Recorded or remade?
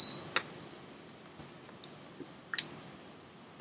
recorded